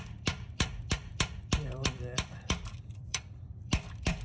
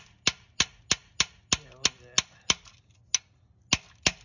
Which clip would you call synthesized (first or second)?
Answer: first